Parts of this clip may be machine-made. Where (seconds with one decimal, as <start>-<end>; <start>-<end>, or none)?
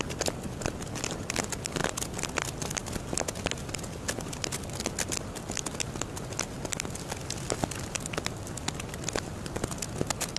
none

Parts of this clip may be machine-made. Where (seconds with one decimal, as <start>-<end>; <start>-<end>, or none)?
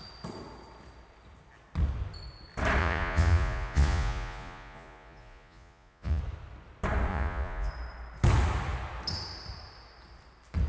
2.8-6.2; 7.1-7.7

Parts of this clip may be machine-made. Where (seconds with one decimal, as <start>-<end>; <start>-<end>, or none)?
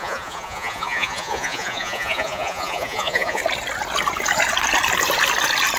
0.0-3.4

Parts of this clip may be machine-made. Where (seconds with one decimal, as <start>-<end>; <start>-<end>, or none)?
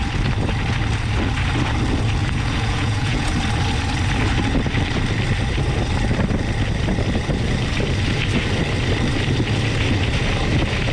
2.2-3.3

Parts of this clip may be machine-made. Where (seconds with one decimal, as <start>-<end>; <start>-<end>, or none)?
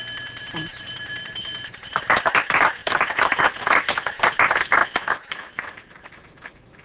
none